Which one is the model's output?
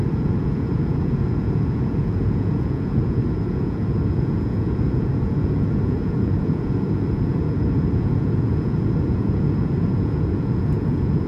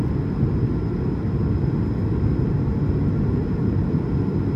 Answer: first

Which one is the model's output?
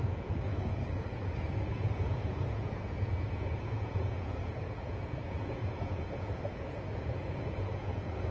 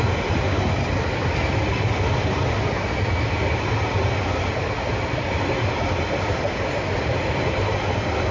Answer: first